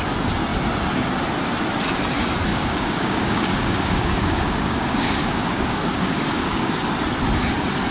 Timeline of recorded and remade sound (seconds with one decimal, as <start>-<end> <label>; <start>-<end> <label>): 0.0-2.5 recorded; 2.5-6.7 remade; 6.7-7.9 recorded